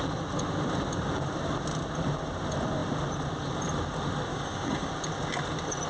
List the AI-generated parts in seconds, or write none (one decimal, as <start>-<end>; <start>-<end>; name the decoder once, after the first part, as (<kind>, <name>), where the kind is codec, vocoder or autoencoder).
4.3-4.9 (codec, DAC)